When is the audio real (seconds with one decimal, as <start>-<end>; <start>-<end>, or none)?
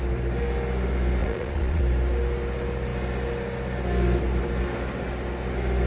0.0-1.2; 1.8-5.9